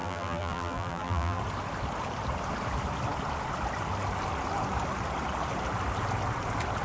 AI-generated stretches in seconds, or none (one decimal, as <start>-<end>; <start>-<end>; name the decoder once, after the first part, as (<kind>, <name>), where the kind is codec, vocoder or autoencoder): 0.0-1.4 (vocoder, BigVGAN v2)